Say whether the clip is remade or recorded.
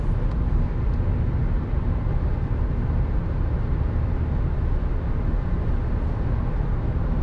recorded